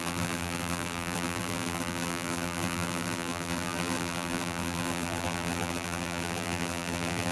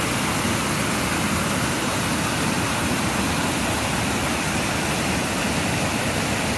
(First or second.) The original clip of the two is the second